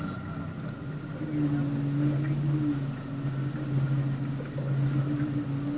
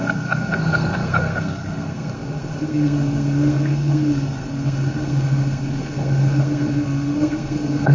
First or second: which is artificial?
second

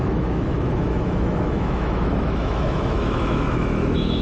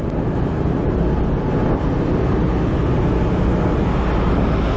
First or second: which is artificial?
first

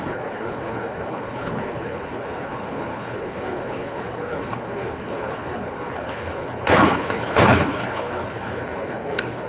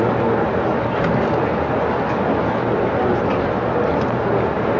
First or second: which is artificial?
first